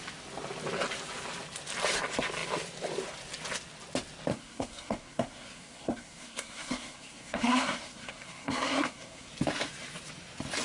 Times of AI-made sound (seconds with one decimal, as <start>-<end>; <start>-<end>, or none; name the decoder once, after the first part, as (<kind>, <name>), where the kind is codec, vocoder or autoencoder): 4.3-9.3 (codec, SNAC)